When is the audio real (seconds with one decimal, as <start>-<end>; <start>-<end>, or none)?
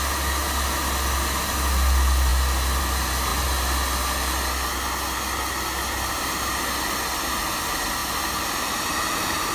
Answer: 0.0-9.5